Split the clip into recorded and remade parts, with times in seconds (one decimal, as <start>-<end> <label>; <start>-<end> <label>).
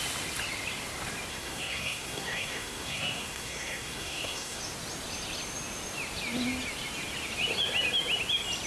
0.0-1.3 recorded; 1.3-4.6 remade; 4.6-8.7 recorded